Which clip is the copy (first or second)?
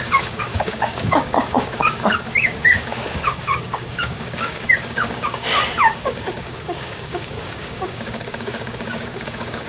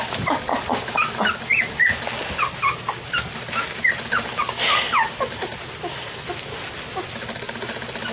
first